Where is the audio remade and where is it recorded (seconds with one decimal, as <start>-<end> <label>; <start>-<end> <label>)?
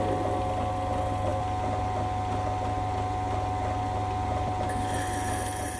0.0-5.8 recorded